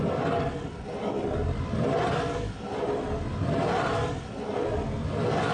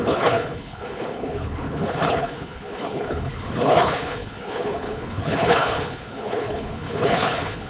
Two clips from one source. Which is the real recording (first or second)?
first